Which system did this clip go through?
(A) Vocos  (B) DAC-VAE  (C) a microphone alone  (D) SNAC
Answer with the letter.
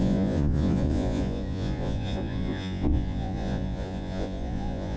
A